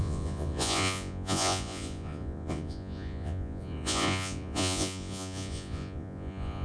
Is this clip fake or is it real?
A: fake